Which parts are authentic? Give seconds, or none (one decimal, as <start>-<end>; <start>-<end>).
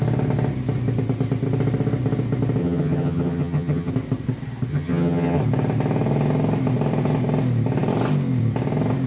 0.0-2.6; 3.9-4.7; 5.4-9.1